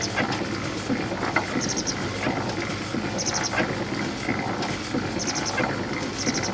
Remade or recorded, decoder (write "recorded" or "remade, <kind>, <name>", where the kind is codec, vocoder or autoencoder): recorded